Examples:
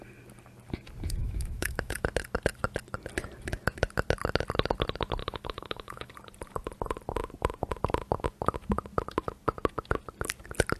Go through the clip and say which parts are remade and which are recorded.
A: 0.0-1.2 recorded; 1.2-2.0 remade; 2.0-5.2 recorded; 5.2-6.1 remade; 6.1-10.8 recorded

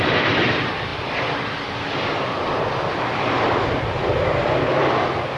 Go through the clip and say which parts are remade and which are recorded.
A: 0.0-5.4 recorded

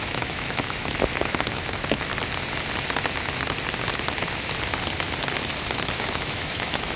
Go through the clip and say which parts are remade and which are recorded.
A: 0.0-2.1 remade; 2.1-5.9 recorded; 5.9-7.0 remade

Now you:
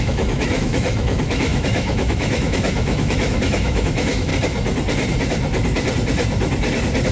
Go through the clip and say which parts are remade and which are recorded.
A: 0.0-4.3 remade; 4.3-7.1 recorded